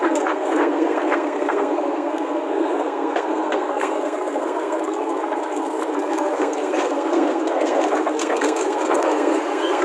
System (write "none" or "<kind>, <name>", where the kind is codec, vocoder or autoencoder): codec, SNAC